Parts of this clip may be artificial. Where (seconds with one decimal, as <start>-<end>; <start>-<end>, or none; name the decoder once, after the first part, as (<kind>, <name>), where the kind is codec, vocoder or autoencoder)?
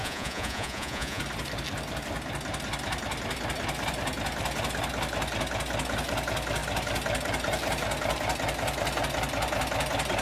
0.0-1.2 (vocoder, Vocos)